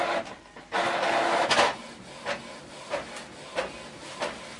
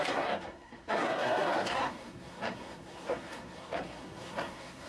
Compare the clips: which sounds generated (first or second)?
second